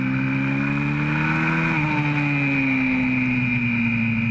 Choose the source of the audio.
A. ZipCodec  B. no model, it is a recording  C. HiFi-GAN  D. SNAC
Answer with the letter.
B